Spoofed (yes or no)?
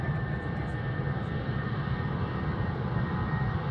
yes